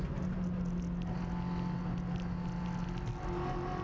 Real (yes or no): yes